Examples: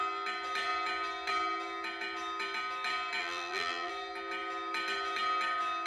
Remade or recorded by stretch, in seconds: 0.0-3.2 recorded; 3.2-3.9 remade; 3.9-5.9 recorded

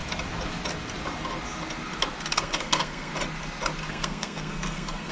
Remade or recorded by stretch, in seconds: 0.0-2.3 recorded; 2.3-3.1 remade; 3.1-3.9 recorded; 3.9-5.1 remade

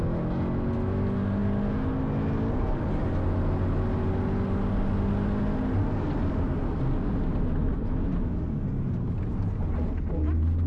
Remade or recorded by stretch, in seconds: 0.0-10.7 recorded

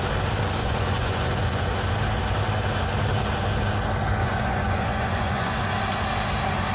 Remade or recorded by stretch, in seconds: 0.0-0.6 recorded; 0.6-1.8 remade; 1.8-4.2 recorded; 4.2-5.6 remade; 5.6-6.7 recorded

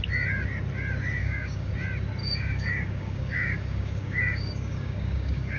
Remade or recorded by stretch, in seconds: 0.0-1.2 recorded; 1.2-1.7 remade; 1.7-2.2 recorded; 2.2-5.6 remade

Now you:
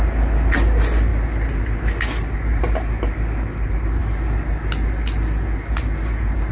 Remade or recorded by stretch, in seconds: 0.0-6.5 recorded